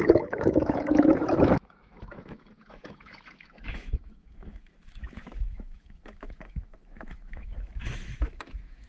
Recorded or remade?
remade